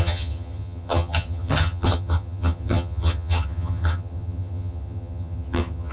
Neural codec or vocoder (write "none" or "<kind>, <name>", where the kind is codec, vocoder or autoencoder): vocoder, HiFi-GAN